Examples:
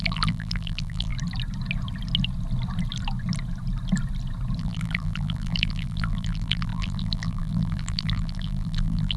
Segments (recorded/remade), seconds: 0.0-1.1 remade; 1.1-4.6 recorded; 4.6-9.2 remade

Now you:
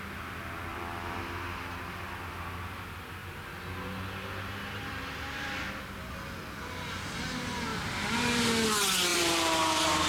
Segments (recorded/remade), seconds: 0.0-0.7 recorded; 0.7-1.2 remade; 1.2-9.1 recorded; 9.1-10.1 remade

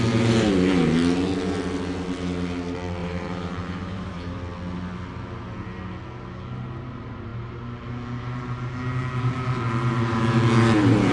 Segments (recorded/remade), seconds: 0.0-3.0 recorded; 3.0-4.4 remade; 4.4-11.1 recorded

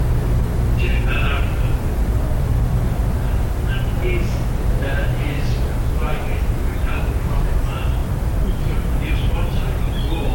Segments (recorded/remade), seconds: 0.0-0.9 recorded; 0.9-2.9 remade; 2.9-6.1 recorded; 6.1-7.3 remade; 7.3-8.0 recorded; 8.0-9.1 remade; 9.1-10.3 recorded

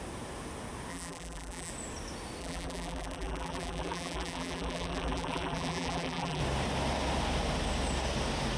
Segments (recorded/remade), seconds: 0.0-0.9 recorded; 0.9-1.7 remade; 1.7-2.4 recorded; 2.4-6.4 remade; 6.4-8.6 recorded

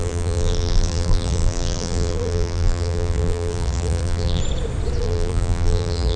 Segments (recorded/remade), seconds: 0.0-4.4 remade; 4.4-5.0 recorded; 5.0-6.2 remade

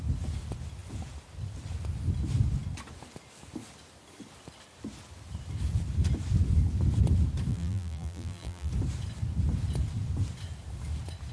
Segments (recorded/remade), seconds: 0.0-7.5 recorded; 7.5-8.7 remade; 8.7-11.3 recorded

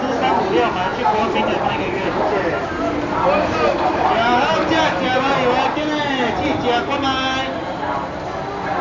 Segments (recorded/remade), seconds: 0.0-0.9 recorded; 0.9-2.8 remade; 2.8-8.8 recorded